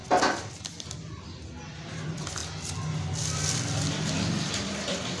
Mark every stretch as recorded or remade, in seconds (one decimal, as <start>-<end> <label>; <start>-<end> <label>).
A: 0.0-5.2 recorded